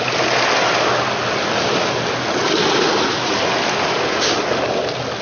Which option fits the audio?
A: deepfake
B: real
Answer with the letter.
B